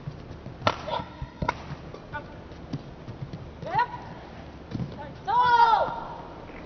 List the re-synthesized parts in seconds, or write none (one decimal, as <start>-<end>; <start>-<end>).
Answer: 0.9-1.5